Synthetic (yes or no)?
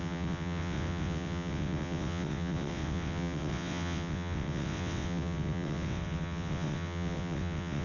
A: yes